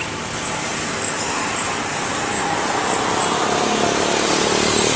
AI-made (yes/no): no